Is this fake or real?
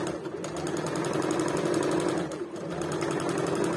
real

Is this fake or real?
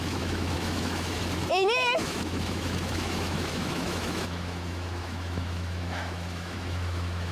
fake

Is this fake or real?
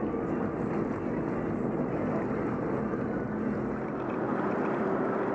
real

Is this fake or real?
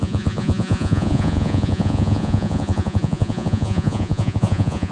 fake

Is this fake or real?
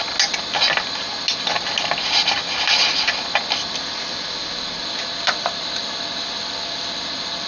real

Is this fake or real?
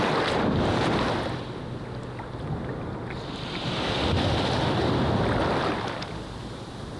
real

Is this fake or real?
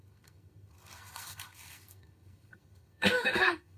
fake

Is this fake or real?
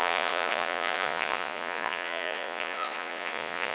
fake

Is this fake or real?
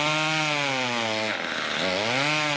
real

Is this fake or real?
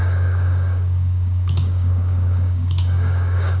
fake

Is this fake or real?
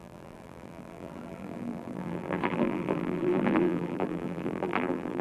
fake